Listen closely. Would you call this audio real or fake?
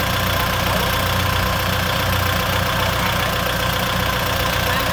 real